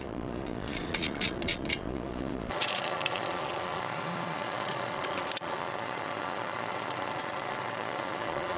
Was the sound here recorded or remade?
remade